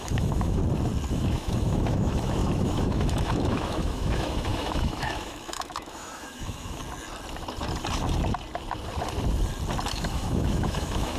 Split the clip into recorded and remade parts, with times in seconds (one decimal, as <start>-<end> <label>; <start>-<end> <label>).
0.0-0.6 remade; 0.6-1.1 recorded; 1.1-6.8 remade; 6.8-9.9 recorded; 9.9-11.2 remade